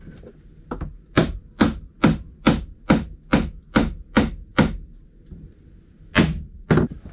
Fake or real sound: real